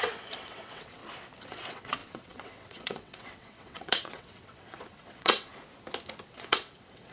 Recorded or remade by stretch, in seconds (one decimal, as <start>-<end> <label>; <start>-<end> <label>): 0.0-1.0 remade; 1.0-1.5 recorded; 1.5-5.5 remade; 5.5-6.3 recorded; 6.3-7.1 remade